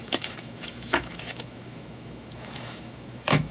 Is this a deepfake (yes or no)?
yes